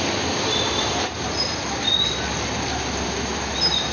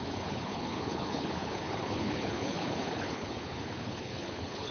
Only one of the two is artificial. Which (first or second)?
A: second